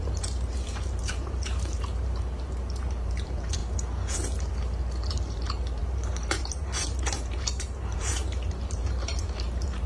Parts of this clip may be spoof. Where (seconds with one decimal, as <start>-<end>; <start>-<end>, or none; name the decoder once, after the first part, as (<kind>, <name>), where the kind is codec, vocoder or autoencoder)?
0.0-3.6 (vocoder, BigVGAN v2); 5.1-9.9